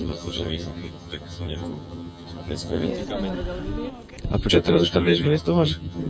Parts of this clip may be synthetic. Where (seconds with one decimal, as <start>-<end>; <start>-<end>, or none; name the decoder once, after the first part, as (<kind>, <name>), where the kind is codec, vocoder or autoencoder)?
0.0-2.9 (vocoder, HiFi-GAN); 4.5-6.1